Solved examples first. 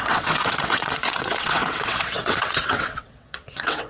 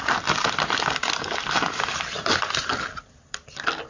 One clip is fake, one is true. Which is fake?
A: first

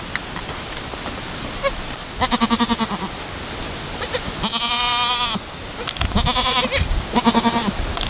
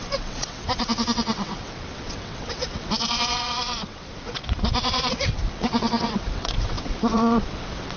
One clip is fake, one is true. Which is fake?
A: second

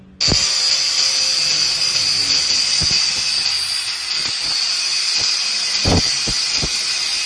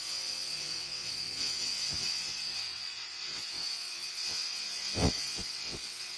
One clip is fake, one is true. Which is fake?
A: second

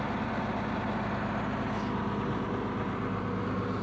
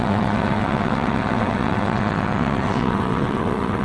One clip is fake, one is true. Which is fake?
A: second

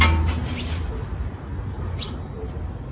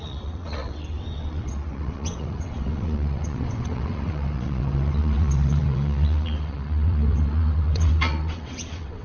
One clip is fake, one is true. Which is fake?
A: second